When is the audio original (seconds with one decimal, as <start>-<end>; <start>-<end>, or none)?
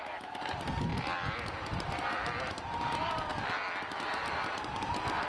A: 0.9-2.5; 3.3-4.0